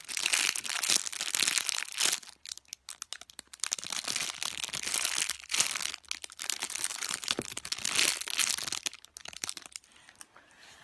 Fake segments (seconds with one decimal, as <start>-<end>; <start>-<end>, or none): 6.9-7.7; 9.2-10.8